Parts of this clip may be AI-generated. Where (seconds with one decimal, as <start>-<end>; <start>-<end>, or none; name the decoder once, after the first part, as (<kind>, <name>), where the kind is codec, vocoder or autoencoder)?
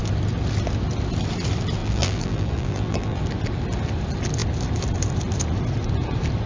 1.8-3.2 (vocoder, BigVGAN v2)